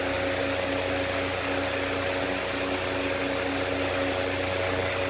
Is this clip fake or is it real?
real